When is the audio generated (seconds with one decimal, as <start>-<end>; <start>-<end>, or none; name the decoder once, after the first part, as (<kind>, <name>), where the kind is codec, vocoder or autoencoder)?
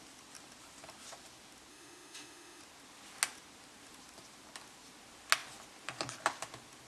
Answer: 1.7-2.6 (autoencoder, DAC-VAE)